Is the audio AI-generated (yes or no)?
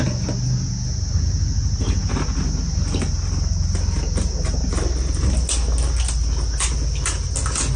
no